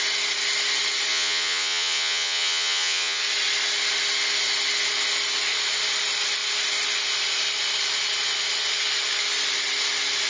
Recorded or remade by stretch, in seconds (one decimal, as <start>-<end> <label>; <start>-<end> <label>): 0.0-1.1 recorded; 1.1-3.2 remade; 3.2-10.3 recorded